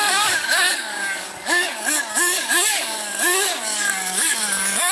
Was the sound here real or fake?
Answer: fake